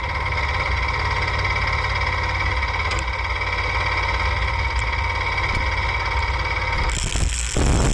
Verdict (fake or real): real